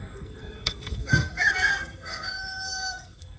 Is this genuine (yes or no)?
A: no